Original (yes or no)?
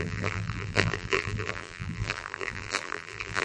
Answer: no